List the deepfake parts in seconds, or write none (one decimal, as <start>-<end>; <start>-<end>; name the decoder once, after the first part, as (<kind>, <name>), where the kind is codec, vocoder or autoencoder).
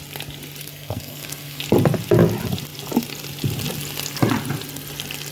0.6-1.6 (codec, SNAC)